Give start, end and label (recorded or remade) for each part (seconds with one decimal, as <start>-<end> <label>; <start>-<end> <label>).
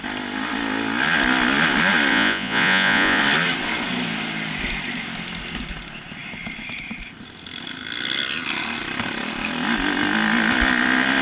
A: 0.0-2.1 recorded; 2.1-3.2 remade; 3.2-11.2 recorded